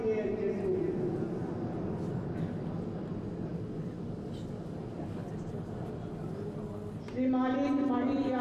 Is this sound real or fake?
real